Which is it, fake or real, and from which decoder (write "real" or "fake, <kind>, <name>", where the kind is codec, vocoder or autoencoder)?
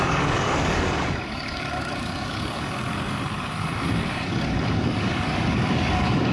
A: fake, codec, DAC